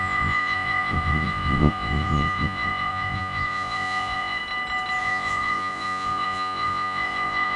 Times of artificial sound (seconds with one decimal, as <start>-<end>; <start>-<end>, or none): 0.0-4.4; 5.0-7.6